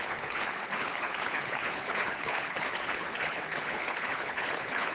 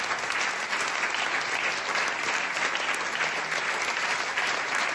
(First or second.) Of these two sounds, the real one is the second